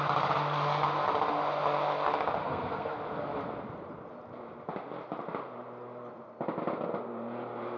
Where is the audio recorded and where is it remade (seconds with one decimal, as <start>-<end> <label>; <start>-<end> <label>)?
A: 0.0-2.4 recorded; 2.4-2.9 remade; 2.9-7.8 recorded